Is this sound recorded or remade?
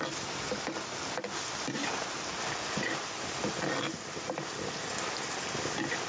recorded